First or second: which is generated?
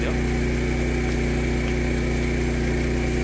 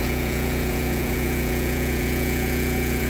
second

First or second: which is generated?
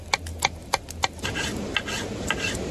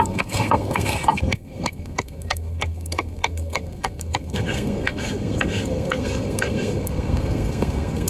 second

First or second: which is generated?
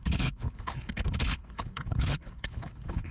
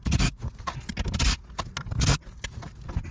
first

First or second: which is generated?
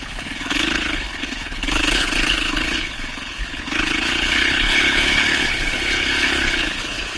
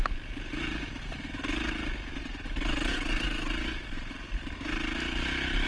first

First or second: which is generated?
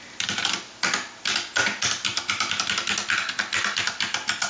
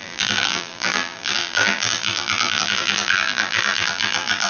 second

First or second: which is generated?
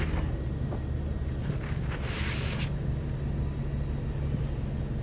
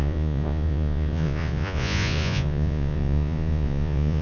second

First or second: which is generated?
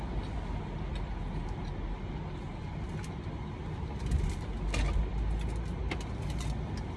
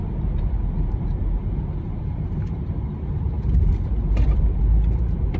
second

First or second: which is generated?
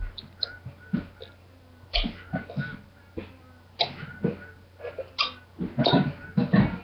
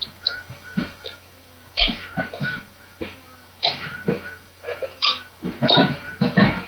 second